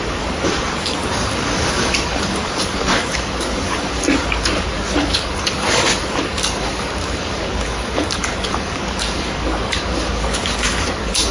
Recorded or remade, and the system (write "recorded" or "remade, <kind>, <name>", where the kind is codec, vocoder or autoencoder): remade, codec, DAC